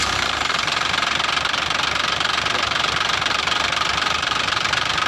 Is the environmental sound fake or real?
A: fake